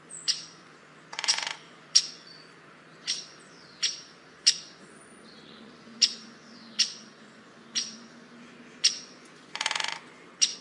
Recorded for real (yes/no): no